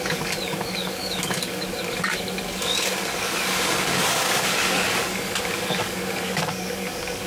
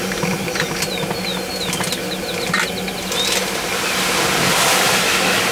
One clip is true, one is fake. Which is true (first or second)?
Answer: second